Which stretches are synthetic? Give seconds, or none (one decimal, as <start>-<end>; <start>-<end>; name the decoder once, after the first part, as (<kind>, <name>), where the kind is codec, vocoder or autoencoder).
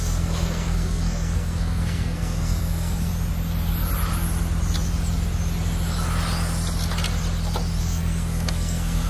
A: 0.0-3.1 (codec, SNAC); 7.8-9.1